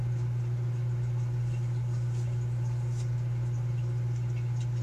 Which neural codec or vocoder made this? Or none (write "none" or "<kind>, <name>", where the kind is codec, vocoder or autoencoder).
none